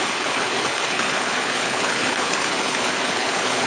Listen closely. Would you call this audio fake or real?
fake